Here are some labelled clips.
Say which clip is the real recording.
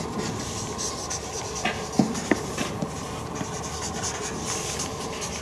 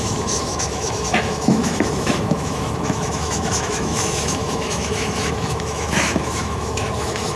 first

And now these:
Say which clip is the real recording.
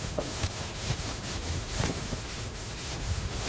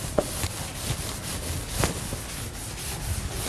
second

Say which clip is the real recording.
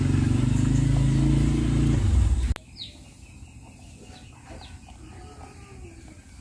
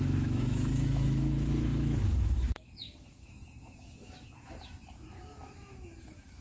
first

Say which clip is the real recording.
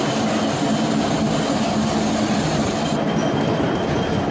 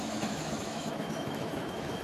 first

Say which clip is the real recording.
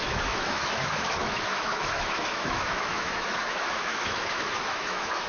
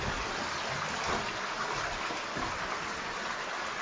second